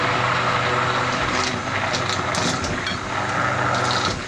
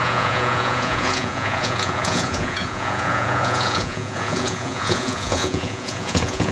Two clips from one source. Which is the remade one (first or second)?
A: second